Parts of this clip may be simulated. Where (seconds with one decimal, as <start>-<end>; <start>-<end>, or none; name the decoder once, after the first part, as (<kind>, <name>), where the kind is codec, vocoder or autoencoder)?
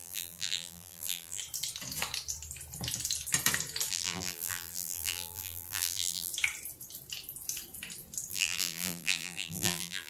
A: 0.0-1.4 (vocoder, BigVGAN v2); 3.9-6.3; 8.3-10.1